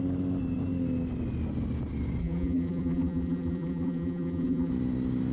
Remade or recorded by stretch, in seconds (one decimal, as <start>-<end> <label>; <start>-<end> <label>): 0.0-2.2 recorded; 2.2-4.7 remade; 4.7-5.3 recorded

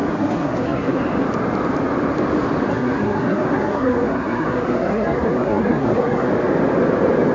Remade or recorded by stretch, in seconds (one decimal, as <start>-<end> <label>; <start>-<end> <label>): 0.0-1.0 remade; 1.0-2.7 recorded; 2.7-6.3 remade; 6.3-7.3 recorded